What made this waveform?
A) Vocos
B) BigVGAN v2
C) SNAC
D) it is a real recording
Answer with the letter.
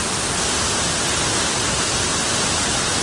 D